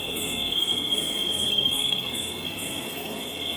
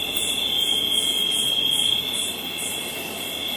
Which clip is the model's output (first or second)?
first